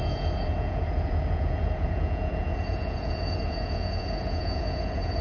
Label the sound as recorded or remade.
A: remade